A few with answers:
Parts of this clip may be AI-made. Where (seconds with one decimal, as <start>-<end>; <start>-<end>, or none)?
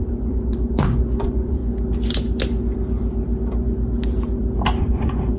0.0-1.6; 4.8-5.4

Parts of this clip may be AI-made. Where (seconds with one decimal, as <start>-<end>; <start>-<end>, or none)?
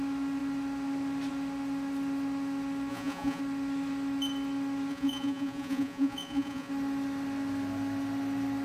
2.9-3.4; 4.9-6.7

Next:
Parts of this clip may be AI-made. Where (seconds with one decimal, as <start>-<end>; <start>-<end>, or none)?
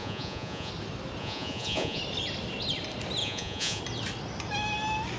0.0-0.7; 1.2-2.0; 3.2-3.8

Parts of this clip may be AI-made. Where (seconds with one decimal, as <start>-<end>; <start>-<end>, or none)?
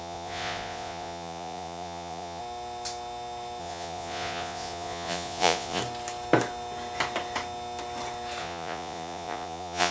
0.0-2.4; 3.6-5.8; 8.4-9.9